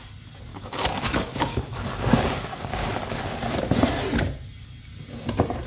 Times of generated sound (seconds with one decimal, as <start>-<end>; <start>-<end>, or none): 0.5-3.2